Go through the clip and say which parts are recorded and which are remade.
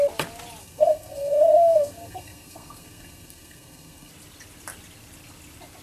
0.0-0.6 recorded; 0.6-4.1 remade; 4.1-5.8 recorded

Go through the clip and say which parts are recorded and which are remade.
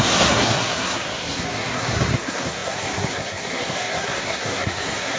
0.0-5.2 remade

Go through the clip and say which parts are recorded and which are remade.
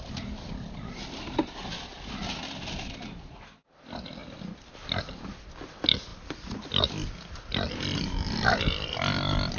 0.0-9.6 recorded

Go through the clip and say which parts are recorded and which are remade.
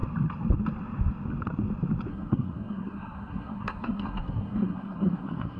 0.0-2.1 recorded; 2.1-5.6 remade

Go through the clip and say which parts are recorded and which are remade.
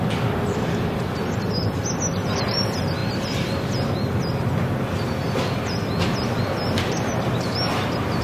0.0-8.2 recorded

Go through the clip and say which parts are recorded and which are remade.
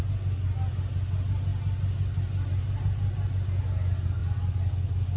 0.0-5.2 recorded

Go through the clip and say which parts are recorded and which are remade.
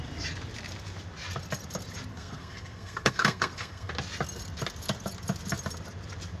0.0-2.1 recorded; 2.1-3.9 remade; 3.9-6.4 recorded